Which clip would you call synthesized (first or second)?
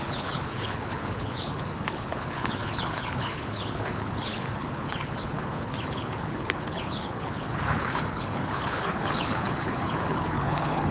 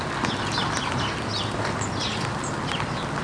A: first